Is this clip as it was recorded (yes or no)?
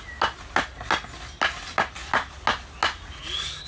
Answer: yes